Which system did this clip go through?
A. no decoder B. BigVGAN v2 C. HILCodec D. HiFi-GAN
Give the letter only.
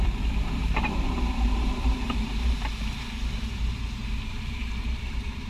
B